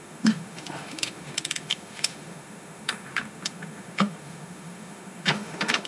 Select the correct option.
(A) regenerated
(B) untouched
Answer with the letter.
A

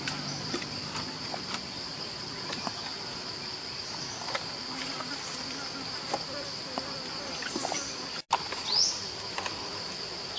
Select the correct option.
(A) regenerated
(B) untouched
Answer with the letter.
B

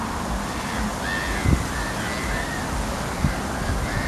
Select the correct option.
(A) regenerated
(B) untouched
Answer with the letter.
B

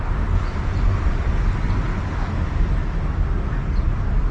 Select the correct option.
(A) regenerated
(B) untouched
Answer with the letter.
B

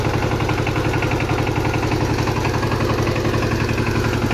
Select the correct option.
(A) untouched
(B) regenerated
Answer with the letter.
A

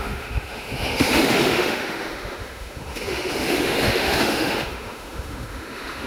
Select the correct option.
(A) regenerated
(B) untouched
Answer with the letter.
A